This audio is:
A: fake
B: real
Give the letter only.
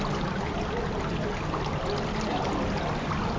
B